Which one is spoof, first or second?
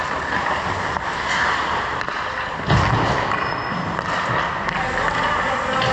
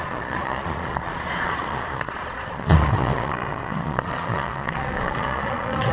second